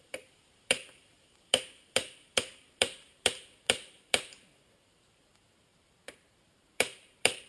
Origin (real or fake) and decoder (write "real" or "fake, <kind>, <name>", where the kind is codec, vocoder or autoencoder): fake, vocoder, BigVGAN v2